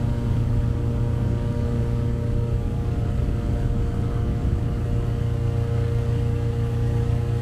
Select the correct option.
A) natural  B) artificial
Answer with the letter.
B